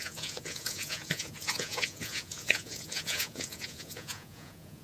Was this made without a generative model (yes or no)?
no